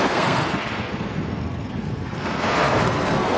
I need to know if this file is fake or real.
fake